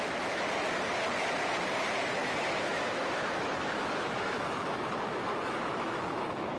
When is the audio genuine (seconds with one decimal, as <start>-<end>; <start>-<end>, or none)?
0.0-2.2